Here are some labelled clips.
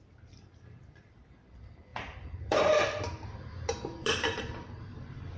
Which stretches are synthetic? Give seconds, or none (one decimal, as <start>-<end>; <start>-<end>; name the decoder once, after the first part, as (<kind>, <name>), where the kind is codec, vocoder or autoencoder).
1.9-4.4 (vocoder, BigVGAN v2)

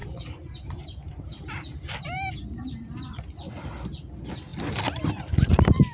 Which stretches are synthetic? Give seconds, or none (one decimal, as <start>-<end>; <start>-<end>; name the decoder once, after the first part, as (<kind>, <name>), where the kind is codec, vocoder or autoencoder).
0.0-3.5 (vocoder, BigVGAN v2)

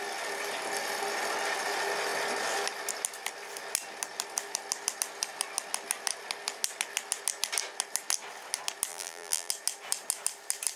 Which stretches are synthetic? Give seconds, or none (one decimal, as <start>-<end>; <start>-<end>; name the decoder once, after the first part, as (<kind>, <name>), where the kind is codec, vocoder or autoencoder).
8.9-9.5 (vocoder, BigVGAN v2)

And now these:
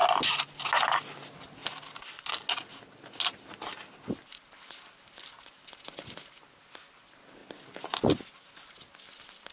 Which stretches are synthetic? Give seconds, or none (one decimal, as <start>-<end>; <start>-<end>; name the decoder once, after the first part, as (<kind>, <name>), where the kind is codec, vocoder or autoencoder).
1.6-2.3 (vocoder, BigVGAN v2); 7.4-8.7